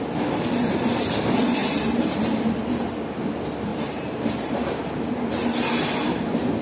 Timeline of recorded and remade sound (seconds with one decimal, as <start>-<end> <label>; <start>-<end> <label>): 0.0-1.6 recorded; 1.6-3.0 remade; 3.0-3.7 recorded; 3.7-4.7 remade; 4.7-6.6 recorded